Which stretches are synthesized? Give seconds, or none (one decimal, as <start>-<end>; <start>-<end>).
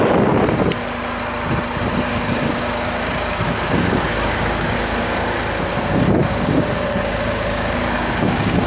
2.1-5.4; 6.2-8.7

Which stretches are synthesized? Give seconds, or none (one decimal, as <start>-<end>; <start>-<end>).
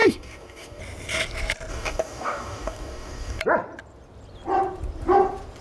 0.0-0.8; 1.7-3.4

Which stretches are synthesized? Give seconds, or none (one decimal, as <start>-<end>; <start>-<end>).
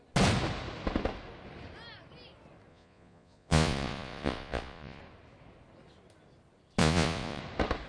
2.7-5.0; 6.8-7.4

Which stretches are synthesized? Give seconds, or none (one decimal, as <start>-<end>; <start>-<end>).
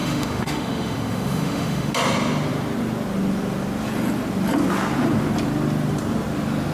0.0-1.9